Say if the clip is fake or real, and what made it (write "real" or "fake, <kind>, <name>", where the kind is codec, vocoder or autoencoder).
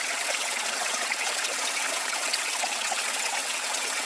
fake, vocoder, WaveNeXt